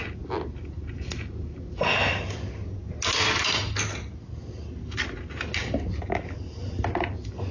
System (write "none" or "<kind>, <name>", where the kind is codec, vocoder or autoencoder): none